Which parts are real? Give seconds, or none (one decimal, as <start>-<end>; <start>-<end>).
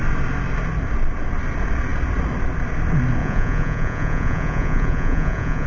0.0-3.2